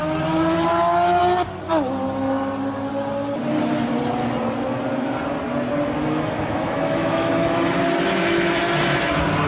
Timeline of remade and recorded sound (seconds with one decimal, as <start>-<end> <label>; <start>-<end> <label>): 0.0-6.0 recorded; 6.0-7.8 remade; 7.8-9.5 recorded